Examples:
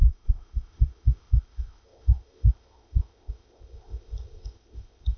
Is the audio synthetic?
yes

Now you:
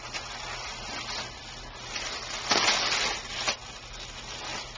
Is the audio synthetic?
no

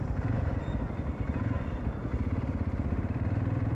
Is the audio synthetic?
yes